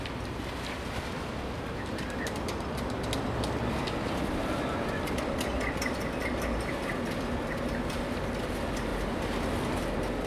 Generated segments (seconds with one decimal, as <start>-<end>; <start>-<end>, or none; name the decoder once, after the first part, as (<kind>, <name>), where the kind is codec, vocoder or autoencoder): none